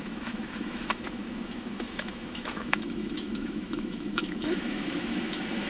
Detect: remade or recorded remade